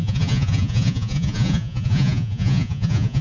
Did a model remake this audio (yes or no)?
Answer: yes